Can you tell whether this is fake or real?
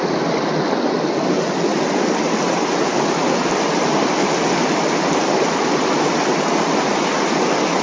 real